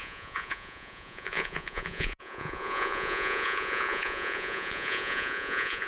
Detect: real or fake fake